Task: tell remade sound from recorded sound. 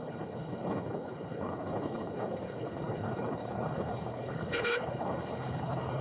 remade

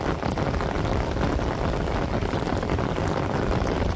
recorded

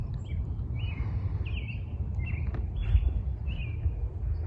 recorded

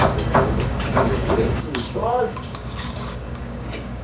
remade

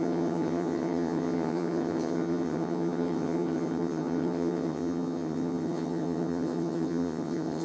remade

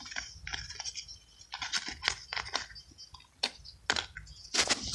recorded